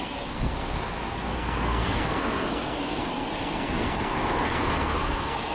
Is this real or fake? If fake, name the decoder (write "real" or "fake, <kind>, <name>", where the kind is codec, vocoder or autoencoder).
fake, codec, SNAC